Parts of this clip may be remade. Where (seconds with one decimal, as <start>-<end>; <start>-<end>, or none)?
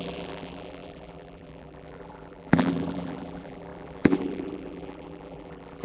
0.0-5.8